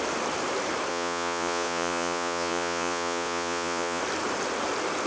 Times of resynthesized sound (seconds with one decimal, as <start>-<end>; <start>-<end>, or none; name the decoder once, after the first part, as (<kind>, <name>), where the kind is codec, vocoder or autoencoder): 0.9-4.0 (vocoder, Vocos)